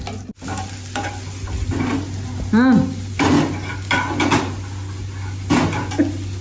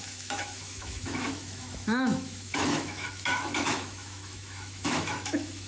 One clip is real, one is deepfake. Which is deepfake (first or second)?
second